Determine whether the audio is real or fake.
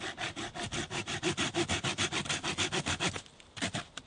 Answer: fake